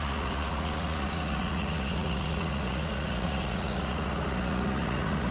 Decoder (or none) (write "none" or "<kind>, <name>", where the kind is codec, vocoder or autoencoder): vocoder, Vocos